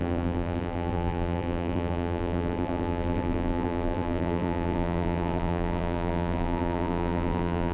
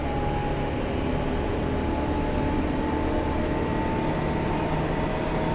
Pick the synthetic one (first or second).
first